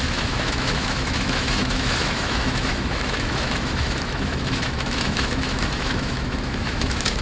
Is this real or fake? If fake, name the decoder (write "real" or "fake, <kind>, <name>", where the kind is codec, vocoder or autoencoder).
fake, autoencoder, DAC-VAE